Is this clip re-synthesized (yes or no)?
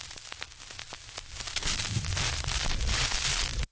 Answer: no